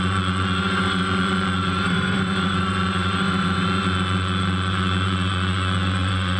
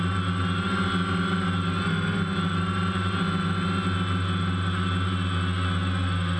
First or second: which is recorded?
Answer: second